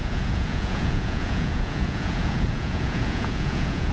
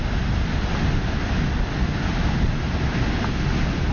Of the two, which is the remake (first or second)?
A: first